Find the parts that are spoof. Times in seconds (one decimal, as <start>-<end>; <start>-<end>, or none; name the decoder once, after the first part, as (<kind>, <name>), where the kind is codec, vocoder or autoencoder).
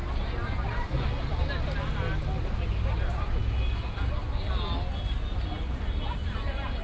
none